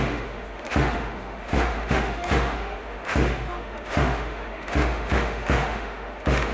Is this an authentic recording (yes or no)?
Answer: no